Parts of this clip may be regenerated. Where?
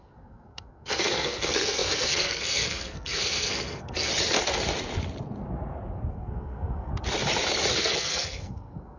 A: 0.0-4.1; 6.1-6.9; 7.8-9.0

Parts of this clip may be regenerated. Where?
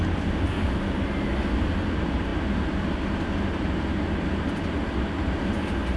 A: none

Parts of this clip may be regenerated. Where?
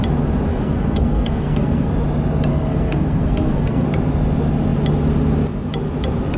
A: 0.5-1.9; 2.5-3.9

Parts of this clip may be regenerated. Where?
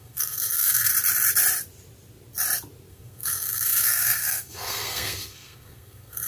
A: 0.0-0.9; 2.9-6.3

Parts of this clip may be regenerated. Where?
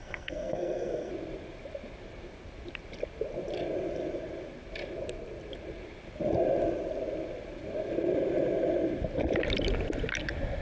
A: 0.0-1.1